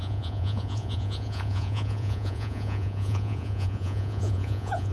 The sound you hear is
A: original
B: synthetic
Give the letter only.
B